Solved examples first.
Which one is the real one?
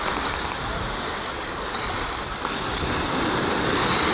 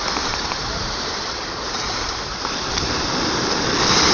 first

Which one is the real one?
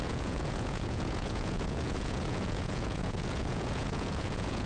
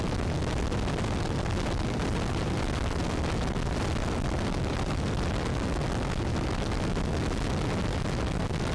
second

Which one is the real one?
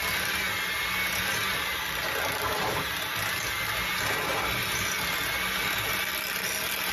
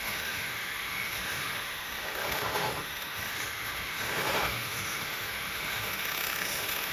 first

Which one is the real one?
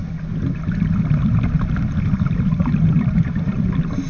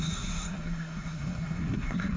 first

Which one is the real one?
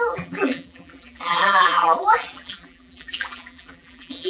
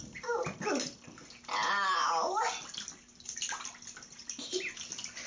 second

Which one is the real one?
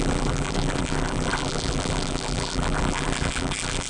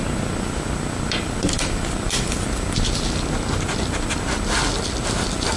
second